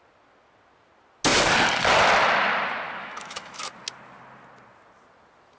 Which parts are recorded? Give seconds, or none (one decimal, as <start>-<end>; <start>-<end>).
0.0-3.0; 3.7-5.6